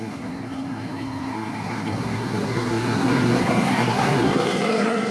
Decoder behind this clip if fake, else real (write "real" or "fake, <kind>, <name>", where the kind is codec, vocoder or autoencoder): fake, codec, SNAC